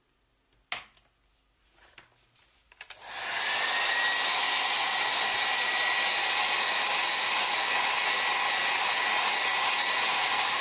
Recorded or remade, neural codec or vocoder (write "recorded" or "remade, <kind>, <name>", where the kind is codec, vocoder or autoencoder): recorded